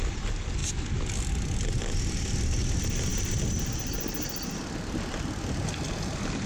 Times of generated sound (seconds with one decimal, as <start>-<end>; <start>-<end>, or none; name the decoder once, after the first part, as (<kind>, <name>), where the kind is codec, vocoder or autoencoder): none